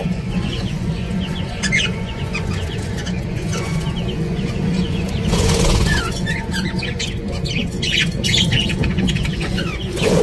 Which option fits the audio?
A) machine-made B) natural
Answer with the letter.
A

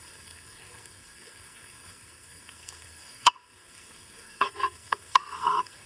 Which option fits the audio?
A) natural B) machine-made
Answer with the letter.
B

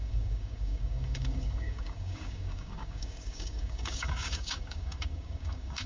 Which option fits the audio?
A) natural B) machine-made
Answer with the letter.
B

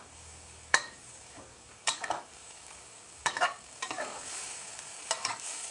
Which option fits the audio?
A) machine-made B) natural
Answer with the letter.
A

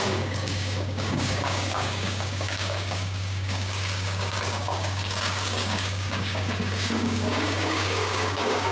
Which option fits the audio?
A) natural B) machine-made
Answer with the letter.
B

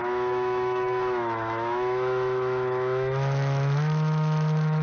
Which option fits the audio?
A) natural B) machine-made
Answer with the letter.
B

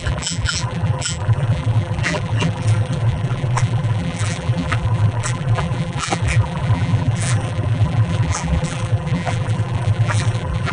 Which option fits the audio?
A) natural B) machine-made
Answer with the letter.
B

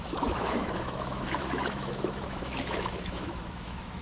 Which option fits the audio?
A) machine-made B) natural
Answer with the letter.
A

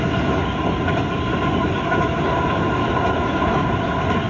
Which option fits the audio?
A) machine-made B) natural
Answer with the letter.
B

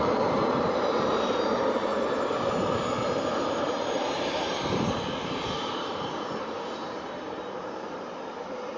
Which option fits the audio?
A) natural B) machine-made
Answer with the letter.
B